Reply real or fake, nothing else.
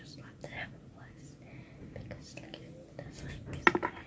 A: real